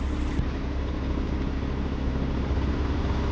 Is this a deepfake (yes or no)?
no